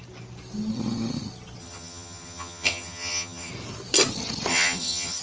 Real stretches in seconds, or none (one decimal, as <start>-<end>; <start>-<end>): 0.0-1.6; 3.5-4.5